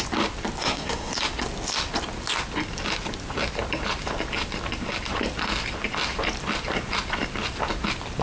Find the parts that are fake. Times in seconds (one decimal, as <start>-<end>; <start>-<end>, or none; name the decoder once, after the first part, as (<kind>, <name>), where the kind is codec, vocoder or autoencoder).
0.6-1.1 (codec, SNAC)